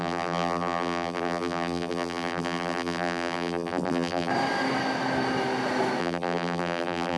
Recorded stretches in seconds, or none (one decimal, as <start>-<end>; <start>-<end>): 4.3-6.0